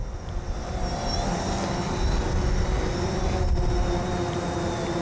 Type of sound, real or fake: real